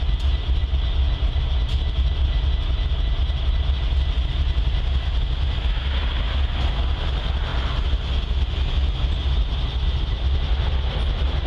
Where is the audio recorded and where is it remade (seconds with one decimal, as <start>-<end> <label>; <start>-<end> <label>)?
0.0-11.5 recorded